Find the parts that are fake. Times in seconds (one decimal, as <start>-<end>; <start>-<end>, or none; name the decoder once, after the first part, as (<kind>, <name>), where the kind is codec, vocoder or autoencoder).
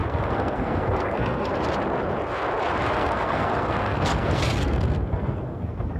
0.0-1.5 (codec, SNAC); 2.9-6.0